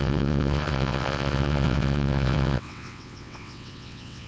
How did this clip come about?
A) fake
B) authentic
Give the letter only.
A